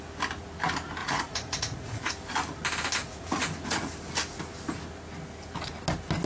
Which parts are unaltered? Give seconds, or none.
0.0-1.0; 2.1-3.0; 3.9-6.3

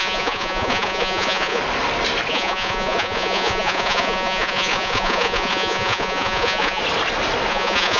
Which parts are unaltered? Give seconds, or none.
1.6-2.3; 6.8-7.5

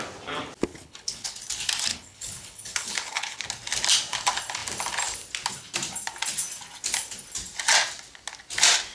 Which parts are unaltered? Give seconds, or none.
0.0-0.7; 1.4-1.9; 3.4-8.9

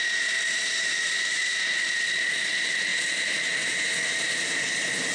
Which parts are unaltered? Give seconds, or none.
0.0-5.1

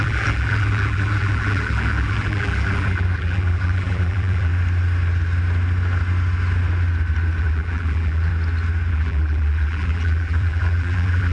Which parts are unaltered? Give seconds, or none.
4.5-7.4; 8.3-8.9

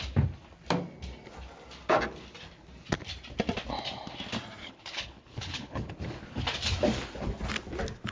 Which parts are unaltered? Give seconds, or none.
0.0-4.6; 5.9-8.1